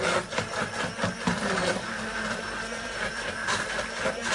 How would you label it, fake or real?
fake